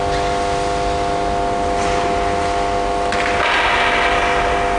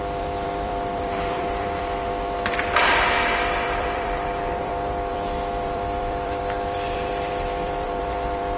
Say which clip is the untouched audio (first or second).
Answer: first